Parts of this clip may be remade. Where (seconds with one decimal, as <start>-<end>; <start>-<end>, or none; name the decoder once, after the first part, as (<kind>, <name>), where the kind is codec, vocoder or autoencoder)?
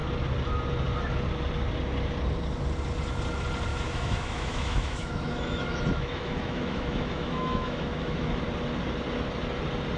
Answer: 3.7-8.4 (autoencoder, DAC-VAE)